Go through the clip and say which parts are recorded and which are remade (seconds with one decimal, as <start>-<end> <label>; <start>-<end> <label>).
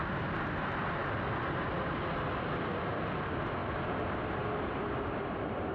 0.0-5.7 recorded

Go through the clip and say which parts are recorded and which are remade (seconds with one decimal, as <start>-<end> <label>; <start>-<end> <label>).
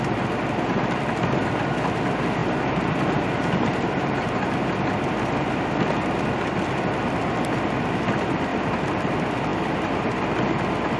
0.0-2.4 recorded; 2.4-4.6 remade; 4.6-11.0 recorded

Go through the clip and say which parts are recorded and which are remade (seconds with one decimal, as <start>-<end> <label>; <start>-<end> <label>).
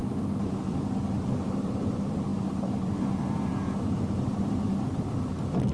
0.0-0.7 recorded; 0.7-5.7 remade